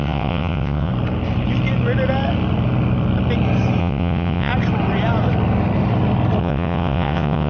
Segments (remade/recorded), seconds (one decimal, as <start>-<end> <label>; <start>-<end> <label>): 0.0-0.9 remade; 0.9-3.8 recorded; 3.8-4.5 remade; 4.5-6.4 recorded; 6.4-7.5 remade